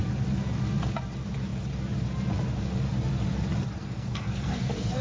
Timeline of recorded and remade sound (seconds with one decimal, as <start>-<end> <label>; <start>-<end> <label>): 0.0-3.8 recorded; 3.8-5.0 remade